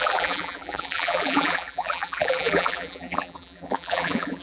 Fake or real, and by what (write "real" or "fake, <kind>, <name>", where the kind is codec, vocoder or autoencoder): fake, vocoder, BigVGAN v2